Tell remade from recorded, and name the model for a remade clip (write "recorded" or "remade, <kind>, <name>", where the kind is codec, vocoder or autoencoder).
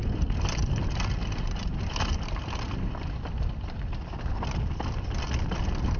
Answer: recorded